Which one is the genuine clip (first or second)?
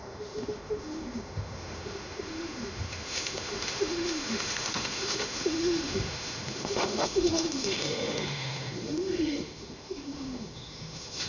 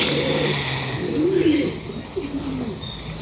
second